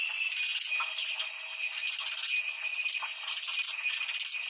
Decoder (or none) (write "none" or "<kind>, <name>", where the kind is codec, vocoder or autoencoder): none